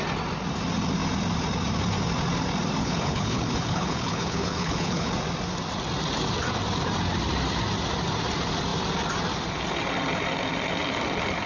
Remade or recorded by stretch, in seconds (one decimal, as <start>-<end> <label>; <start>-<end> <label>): 0.0-2.8 recorded; 2.8-5.1 remade; 5.1-11.5 recorded

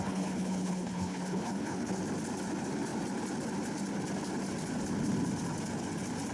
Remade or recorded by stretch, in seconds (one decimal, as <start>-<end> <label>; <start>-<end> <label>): 0.0-2.0 remade; 2.0-6.3 recorded

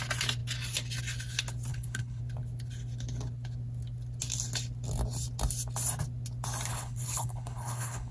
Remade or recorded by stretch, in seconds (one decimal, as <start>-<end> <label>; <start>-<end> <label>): 0.0-1.7 recorded; 1.7-2.2 remade; 2.2-6.7 recorded; 6.7-8.1 remade